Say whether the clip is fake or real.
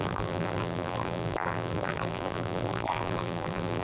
fake